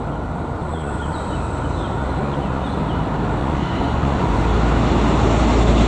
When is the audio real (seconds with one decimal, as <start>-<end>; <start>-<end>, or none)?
0.0-0.6; 1.3-2.0; 2.8-3.4; 4.4-5.9